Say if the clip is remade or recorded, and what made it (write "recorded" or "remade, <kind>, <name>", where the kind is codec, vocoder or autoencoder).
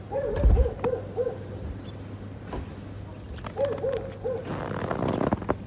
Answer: recorded